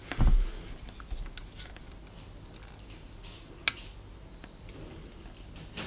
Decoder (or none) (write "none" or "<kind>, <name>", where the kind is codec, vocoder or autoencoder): none